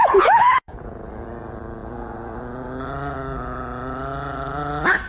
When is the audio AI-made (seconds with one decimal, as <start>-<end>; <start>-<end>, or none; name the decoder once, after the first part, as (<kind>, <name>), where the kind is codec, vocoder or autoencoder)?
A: 0.0-1.1 (vocoder, Vocos)

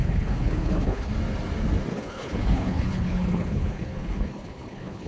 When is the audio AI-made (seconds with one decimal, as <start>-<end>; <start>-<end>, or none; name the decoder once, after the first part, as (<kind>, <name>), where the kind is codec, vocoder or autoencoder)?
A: 0.0-1.1 (codec, HILCodec); 1.9-5.1

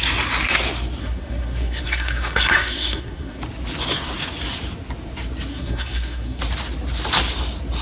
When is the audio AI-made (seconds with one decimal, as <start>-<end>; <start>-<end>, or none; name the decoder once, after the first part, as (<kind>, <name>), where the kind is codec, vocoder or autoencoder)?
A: 1.0-3.4 (codec, SNAC); 5.5-6.4

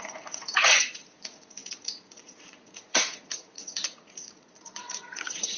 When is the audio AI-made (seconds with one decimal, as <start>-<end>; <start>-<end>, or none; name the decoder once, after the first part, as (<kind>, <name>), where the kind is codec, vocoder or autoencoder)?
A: 0.0-5.6 (vocoder, Vocos)